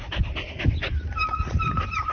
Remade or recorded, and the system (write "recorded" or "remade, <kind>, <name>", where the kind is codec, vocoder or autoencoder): recorded